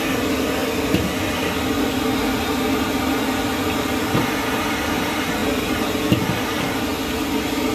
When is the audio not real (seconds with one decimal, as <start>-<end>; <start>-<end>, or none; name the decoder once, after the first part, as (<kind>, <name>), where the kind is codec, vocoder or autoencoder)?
none